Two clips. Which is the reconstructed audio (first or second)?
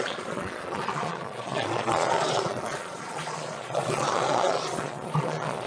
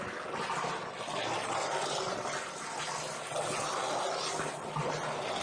first